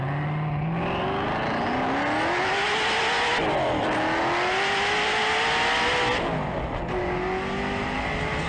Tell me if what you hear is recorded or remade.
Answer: recorded